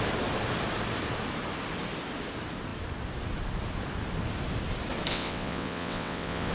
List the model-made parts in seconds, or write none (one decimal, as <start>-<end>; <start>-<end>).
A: 5.1-6.5